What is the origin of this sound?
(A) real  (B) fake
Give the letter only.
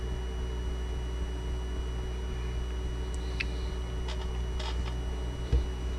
A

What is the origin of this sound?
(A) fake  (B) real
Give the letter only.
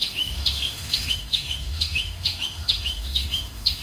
A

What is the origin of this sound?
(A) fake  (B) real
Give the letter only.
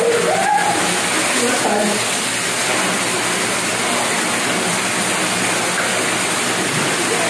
B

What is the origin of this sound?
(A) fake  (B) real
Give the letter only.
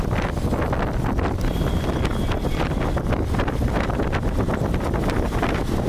B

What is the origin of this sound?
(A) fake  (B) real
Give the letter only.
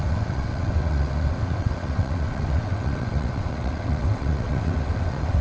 A